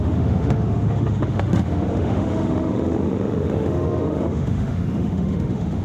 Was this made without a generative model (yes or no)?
no